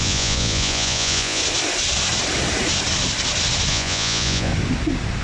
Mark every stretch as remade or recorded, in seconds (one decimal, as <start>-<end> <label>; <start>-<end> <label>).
0.0-1.4 remade; 1.4-3.7 recorded; 3.7-4.5 remade; 4.5-5.2 recorded